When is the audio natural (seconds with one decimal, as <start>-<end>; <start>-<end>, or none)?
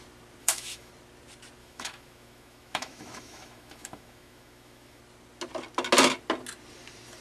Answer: 0.0-0.4; 0.9-1.6; 5.0-7.2